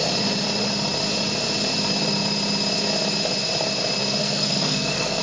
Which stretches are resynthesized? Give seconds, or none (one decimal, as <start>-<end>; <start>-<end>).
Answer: 4.2-5.2

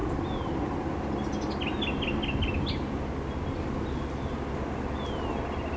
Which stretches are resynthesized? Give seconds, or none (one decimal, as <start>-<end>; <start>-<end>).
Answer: none

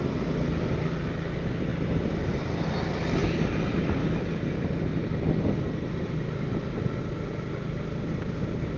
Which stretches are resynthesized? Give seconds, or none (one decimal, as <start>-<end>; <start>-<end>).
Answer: none

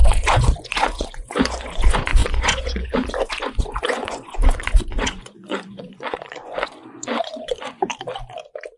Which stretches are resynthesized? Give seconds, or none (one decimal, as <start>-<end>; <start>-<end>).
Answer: 0.0-7.9

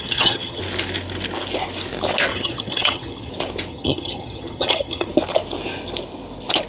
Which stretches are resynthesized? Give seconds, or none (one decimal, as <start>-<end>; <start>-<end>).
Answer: 0.0-0.6; 2.3-3.3; 3.7-5.1

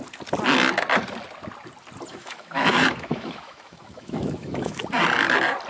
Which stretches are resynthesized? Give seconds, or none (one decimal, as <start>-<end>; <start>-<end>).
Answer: 2.1-4.8